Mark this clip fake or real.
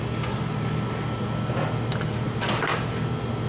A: real